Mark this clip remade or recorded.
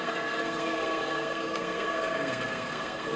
remade